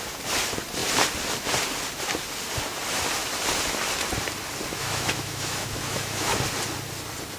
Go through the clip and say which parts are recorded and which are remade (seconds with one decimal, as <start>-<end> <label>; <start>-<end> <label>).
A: 0.0-4.7 recorded; 4.7-6.4 remade; 6.4-7.4 recorded